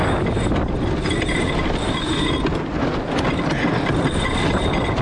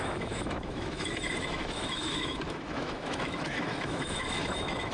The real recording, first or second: first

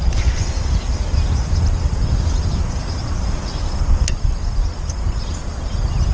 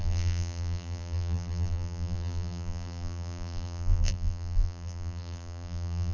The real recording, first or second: first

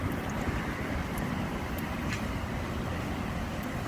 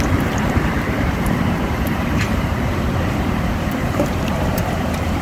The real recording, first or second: first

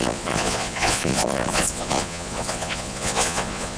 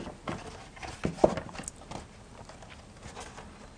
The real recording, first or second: second